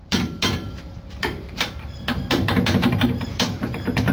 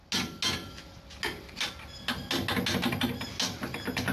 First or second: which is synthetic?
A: first